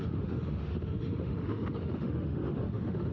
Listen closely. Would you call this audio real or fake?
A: fake